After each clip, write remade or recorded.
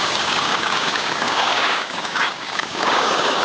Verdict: remade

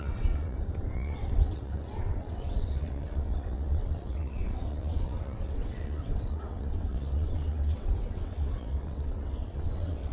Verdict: remade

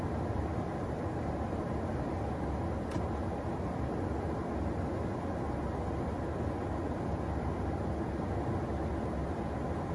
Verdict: recorded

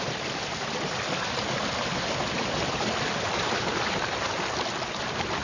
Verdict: recorded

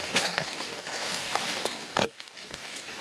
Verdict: remade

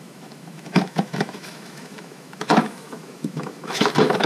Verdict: remade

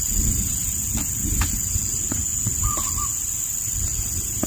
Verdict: recorded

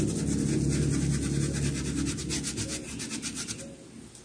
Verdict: recorded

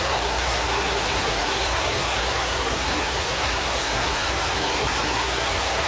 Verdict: remade